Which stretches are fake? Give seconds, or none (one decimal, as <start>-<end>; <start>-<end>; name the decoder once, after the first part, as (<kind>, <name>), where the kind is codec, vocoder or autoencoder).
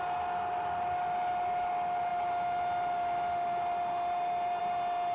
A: none